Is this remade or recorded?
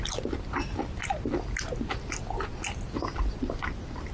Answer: recorded